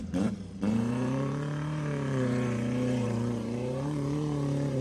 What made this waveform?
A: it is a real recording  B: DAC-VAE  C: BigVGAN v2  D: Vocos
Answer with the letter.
C